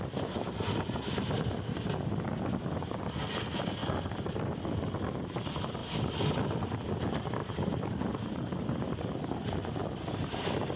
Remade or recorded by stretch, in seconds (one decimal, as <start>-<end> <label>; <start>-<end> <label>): 0.0-3.8 recorded; 3.8-4.7 remade; 4.7-5.8 recorded; 5.8-6.6 remade; 6.6-7.4 recorded; 7.4-8.8 remade; 8.8-9.8 recorded; 9.8-10.8 remade